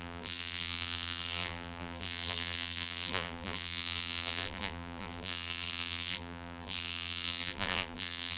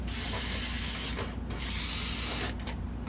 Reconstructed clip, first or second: first